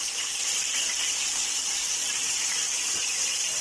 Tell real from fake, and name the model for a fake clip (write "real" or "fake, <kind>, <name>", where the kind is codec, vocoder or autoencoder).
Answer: fake, vocoder, BigVGAN v2